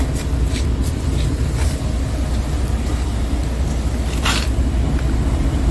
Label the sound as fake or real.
real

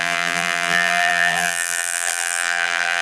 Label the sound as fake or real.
fake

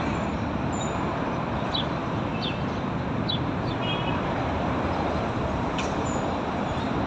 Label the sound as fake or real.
fake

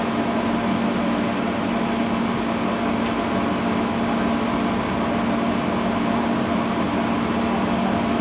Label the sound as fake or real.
real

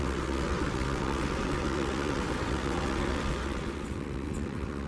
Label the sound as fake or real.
fake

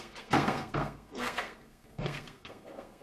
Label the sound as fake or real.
fake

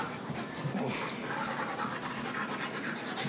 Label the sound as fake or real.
real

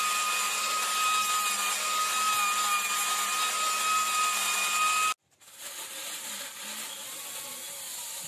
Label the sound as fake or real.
real